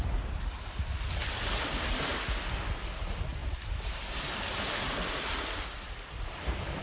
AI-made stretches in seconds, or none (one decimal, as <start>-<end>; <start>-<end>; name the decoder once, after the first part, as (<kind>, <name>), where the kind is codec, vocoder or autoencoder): 1.2-2.1 (vocoder, BigVGAN v2); 3.4-4.8